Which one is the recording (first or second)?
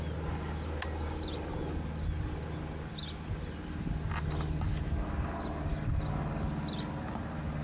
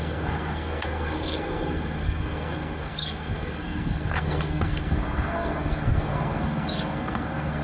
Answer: first